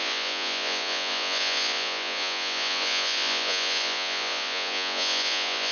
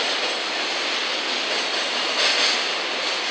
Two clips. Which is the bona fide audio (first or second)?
second